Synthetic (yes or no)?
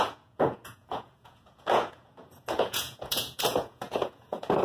yes